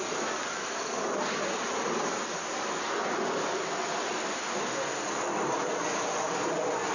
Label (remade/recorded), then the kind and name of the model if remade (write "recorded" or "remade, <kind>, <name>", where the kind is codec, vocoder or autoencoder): recorded